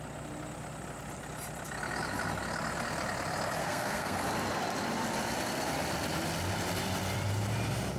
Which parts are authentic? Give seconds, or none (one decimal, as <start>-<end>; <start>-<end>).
0.0-3.6; 4.2-8.0